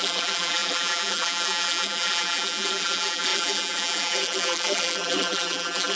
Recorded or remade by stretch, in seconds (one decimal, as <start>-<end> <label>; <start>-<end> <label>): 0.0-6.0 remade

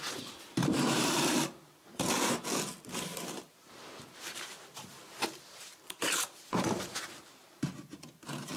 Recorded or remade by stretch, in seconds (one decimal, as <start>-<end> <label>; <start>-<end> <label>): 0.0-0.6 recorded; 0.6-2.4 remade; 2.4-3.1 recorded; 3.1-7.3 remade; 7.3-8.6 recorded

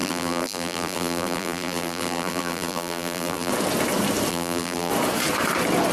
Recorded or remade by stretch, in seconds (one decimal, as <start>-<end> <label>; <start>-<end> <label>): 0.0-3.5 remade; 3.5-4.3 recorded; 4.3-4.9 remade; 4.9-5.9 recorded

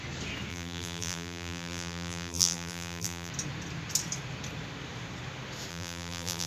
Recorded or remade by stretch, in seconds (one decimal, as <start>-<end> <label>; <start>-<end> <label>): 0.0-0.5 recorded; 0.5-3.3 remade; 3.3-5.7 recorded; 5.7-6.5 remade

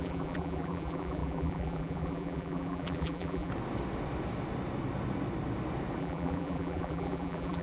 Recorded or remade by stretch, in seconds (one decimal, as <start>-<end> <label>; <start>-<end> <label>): 0.0-3.5 remade; 3.5-6.0 recorded; 6.0-7.6 remade

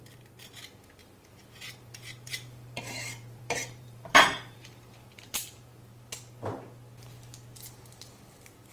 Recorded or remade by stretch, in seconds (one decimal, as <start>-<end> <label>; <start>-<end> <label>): 0.0-1.0 recorded; 1.0-5.9 remade; 5.9-8.7 recorded

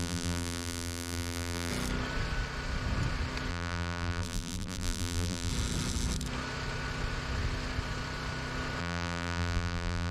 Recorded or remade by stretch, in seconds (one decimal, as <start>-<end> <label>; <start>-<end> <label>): 0.0-1.7 remade; 1.7-3.5 recorded; 3.5-5.5 remade; 5.5-8.8 recorded; 8.8-10.1 remade

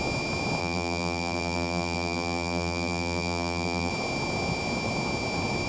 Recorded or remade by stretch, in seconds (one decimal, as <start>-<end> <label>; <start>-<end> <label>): 0.0-0.6 recorded; 0.6-3.9 remade; 3.9-5.7 recorded